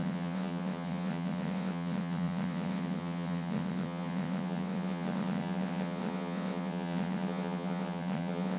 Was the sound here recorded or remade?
remade